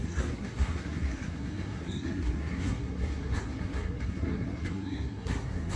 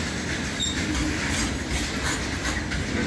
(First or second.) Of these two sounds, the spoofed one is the first